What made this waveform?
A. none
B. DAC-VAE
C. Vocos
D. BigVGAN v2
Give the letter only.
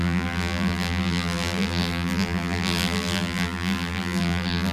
D